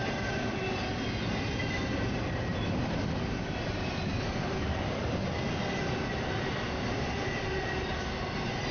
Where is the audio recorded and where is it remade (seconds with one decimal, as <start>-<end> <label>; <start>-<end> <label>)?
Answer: 0.0-8.7 recorded